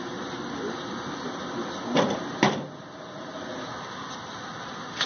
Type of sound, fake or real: real